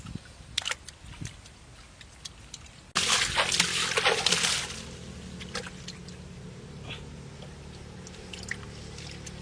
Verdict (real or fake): real